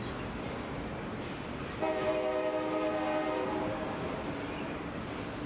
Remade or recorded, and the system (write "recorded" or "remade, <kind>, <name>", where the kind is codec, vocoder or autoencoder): recorded